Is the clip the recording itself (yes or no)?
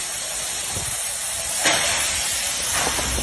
yes